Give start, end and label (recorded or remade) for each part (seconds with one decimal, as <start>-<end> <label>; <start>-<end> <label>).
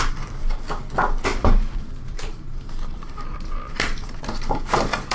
0.0-1.3 recorded; 1.3-4.2 remade; 4.2-5.1 recorded